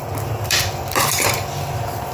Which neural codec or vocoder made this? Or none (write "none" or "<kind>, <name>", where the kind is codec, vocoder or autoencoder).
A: vocoder, BigVGAN v2